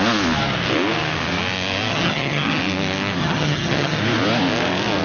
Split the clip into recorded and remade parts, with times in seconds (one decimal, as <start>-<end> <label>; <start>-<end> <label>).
0.0-1.9 recorded; 1.9-2.6 remade; 2.6-3.2 recorded; 3.2-4.0 remade; 4.0-5.0 recorded